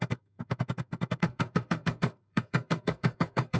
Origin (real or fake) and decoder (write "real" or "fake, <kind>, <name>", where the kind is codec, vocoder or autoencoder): fake, codec, SNAC